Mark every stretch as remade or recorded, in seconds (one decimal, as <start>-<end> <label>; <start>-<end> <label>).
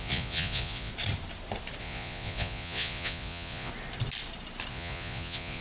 0.0-0.9 remade; 0.9-1.8 recorded; 1.8-3.7 remade; 3.7-4.7 recorded; 4.7-5.6 remade